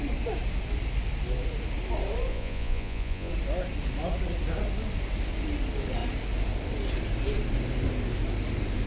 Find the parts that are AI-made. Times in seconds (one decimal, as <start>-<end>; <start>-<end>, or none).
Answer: 2.3-3.3